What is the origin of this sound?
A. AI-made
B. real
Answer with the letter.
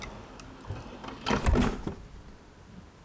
B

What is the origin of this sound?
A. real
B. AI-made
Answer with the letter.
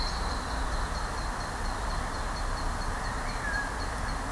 A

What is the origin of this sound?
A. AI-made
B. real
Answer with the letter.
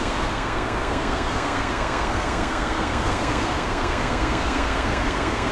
A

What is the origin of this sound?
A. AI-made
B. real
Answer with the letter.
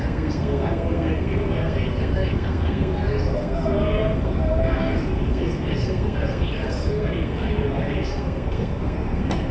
A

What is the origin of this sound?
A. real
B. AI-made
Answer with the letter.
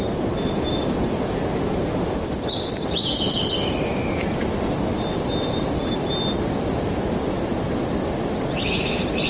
A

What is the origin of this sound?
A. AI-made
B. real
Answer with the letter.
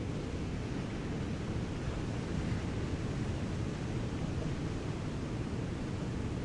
B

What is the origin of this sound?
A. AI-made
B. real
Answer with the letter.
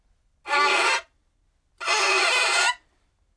B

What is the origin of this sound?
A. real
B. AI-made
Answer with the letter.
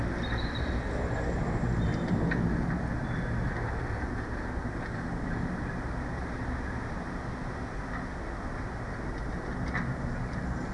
A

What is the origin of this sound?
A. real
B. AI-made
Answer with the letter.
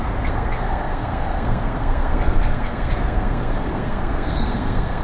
B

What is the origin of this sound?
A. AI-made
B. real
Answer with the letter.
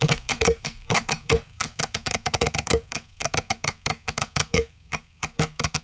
A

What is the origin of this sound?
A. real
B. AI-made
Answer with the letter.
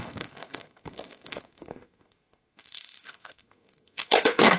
B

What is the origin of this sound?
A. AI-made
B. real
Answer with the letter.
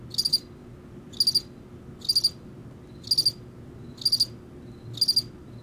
B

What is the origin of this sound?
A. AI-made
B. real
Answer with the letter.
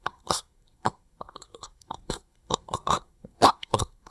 A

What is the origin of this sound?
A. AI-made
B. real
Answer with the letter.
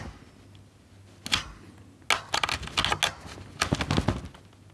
B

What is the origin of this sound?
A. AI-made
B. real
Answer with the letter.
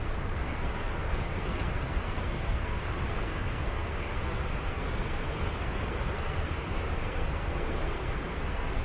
A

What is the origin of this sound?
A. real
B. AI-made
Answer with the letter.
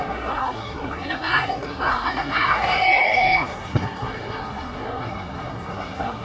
B